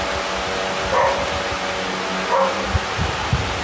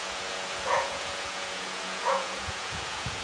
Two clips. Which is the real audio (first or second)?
first